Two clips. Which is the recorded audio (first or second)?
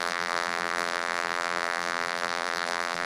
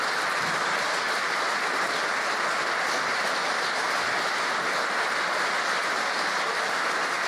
second